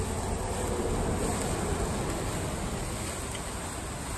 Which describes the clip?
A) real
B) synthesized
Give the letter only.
A